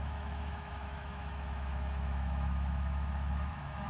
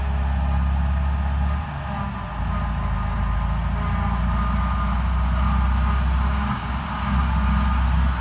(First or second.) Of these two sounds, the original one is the second